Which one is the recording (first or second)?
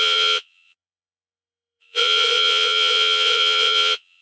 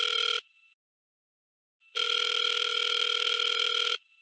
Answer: second